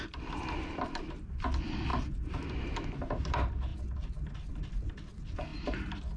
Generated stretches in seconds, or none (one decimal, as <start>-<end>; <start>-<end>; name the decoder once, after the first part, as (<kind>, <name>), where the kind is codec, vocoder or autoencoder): none